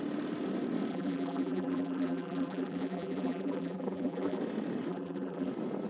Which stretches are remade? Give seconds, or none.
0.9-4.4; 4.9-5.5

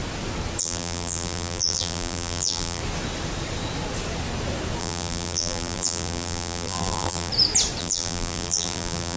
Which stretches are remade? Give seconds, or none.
0.6-2.8; 4.8-7.3; 7.8-9.2

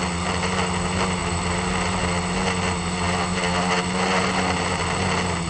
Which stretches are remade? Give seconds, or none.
none

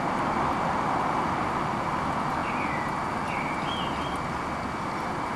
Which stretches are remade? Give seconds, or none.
none